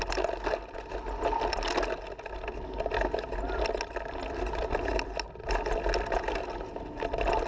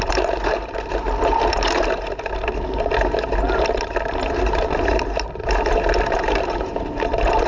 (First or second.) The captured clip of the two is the first